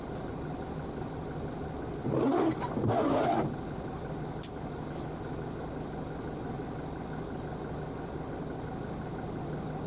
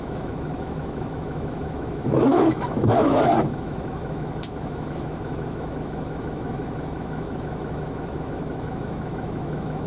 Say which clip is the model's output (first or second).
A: second